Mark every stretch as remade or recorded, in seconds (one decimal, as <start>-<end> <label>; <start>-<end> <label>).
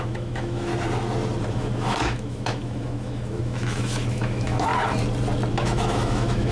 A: 0.0-0.7 remade; 0.7-1.5 recorded; 1.5-4.7 remade; 4.7-5.5 recorded; 5.5-6.5 remade